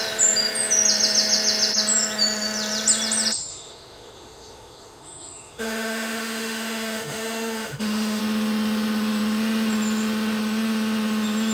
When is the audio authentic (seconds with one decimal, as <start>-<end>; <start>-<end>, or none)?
0.0-3.5; 8.2-11.5